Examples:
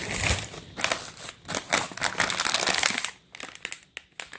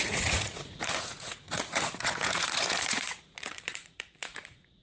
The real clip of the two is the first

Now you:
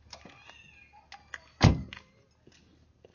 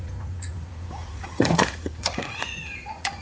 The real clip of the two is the first